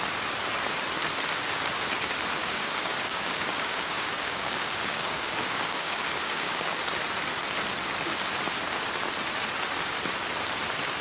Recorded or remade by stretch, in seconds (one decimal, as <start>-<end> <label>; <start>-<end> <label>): 0.0-2.4 recorded; 2.4-6.8 remade; 6.8-11.0 recorded